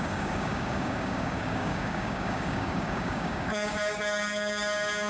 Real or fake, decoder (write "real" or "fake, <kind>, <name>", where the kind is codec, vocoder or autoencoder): fake, codec, DAC